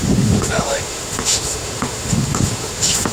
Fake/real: fake